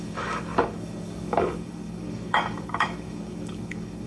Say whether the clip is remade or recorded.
remade